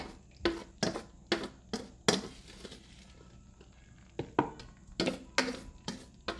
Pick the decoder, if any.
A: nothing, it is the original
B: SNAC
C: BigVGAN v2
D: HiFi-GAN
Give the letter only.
A